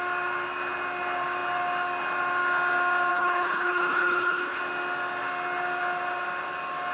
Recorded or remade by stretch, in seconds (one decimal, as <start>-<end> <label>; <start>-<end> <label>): 0.0-3.1 recorded; 3.1-4.6 remade; 4.6-6.9 recorded